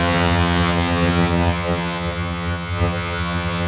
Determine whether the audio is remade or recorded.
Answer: remade